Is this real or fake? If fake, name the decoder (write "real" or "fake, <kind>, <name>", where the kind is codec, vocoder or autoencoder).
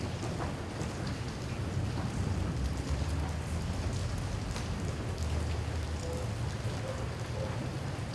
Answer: real